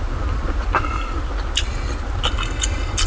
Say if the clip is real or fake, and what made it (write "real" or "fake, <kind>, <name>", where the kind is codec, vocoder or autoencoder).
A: real